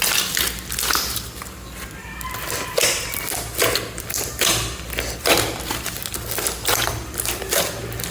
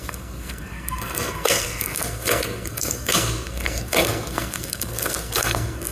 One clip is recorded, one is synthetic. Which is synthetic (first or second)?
second